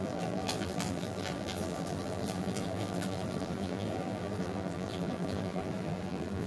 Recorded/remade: remade